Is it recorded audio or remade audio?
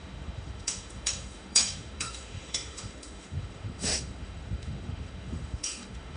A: remade